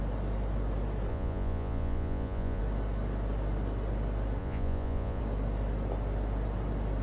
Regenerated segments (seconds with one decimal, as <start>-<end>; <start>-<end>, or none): 1.1-2.6; 4.4-5.2